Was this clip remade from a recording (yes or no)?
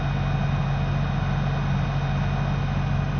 no